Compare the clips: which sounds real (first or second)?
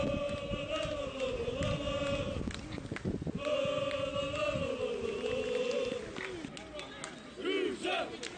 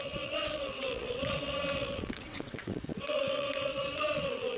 first